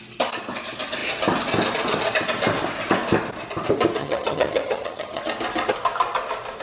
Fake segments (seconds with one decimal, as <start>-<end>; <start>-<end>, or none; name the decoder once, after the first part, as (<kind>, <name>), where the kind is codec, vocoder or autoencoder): 4.0-5.2 (vocoder, HiFi-GAN)